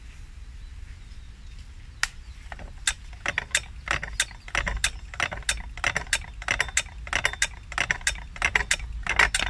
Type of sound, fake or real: real